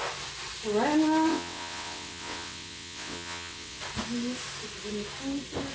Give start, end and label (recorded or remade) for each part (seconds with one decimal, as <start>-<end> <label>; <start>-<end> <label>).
0.0-1.3 recorded; 1.3-3.8 remade; 3.8-5.7 recorded